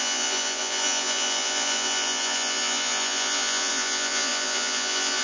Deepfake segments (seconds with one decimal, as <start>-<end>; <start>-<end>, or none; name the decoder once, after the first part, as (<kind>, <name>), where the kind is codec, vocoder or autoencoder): 0.0-5.2 (vocoder, Vocos)